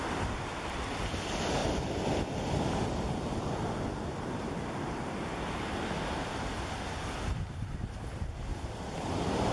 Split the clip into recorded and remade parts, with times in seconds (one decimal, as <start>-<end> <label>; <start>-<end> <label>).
0.0-1.6 recorded; 1.6-3.7 remade; 3.7-8.5 recorded; 8.5-9.5 remade